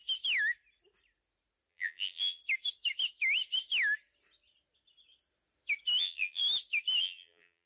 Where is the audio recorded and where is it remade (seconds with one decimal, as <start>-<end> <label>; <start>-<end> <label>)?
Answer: 0.0-1.7 recorded; 1.7-2.4 remade; 2.4-6.0 recorded; 6.0-6.4 remade; 6.4-7.0 recorded; 7.0-7.7 remade